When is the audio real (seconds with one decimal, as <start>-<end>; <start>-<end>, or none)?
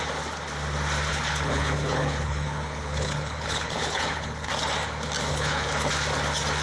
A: 0.0-1.1; 4.5-5.3; 5.9-6.6